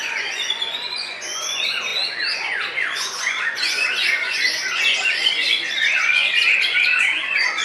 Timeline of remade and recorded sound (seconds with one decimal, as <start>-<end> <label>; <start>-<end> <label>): 0.0-7.6 remade